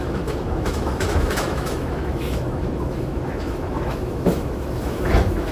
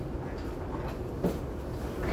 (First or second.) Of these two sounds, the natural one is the second